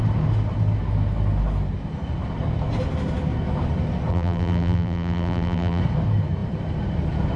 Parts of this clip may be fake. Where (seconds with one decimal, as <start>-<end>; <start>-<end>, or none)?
4.1-5.8